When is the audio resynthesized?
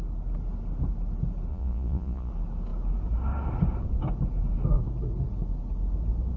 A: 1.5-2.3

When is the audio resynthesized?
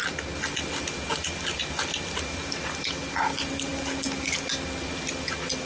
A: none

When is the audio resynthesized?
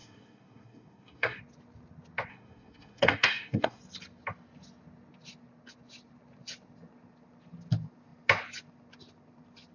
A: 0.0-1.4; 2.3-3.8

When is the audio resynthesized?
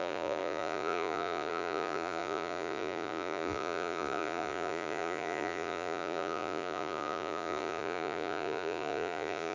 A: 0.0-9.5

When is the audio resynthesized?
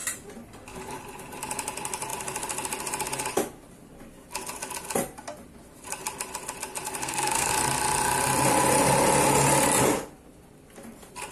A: 7.0-7.5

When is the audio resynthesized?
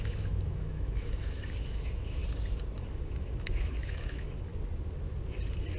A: 0.0-2.2; 2.9-4.5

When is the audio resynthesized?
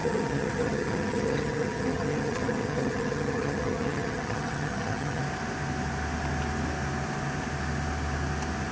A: 0.0-5.2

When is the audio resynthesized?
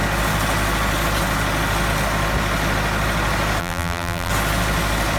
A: 3.6-4.3